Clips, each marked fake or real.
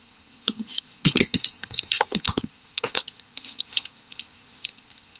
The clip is fake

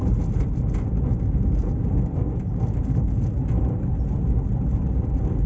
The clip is real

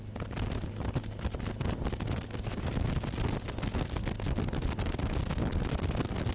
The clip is real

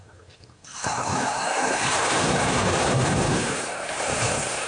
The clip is fake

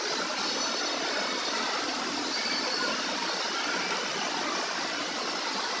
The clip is real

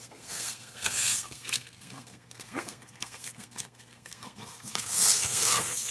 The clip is fake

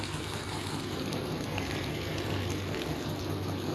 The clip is fake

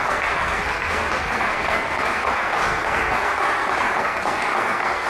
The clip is fake